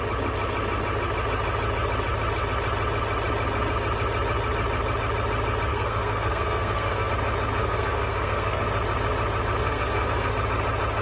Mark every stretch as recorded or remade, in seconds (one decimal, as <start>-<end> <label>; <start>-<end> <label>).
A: 0.0-5.7 recorded; 5.7-7.1 remade; 7.1-7.6 recorded; 7.6-8.6 remade; 8.6-9.6 recorded; 9.6-10.3 remade; 10.3-11.0 recorded